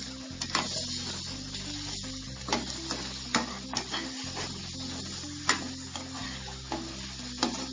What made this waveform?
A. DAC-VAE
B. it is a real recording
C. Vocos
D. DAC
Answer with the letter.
B